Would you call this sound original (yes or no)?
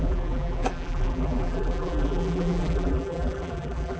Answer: no